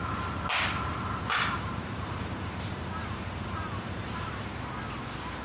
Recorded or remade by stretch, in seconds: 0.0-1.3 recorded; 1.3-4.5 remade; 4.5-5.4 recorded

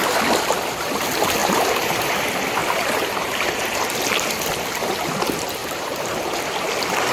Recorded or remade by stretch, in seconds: 0.0-1.4 recorded; 1.4-2.1 remade; 2.1-2.6 recorded; 2.6-3.8 remade; 3.8-5.6 recorded; 5.6-6.2 remade; 6.2-7.1 recorded